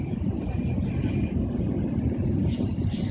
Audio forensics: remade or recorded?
recorded